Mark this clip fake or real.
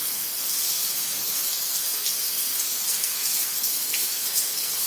fake